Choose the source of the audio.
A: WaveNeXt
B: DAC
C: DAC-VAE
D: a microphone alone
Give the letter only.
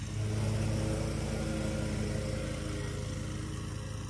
D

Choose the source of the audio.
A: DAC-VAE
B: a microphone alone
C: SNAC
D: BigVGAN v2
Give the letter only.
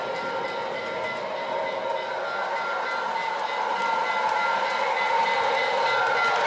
B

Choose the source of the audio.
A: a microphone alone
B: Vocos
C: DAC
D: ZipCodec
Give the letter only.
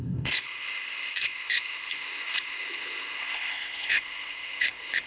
D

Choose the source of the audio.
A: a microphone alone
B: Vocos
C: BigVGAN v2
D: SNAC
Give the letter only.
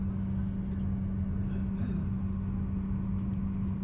A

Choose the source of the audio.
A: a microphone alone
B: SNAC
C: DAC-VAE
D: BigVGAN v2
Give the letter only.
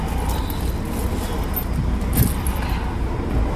A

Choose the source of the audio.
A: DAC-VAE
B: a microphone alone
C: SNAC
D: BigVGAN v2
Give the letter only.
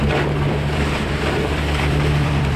D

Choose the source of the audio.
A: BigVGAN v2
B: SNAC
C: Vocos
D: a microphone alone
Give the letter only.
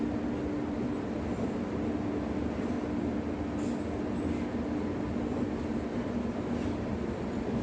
D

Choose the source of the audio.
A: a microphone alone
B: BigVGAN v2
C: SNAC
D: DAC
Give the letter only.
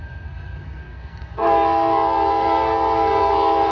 C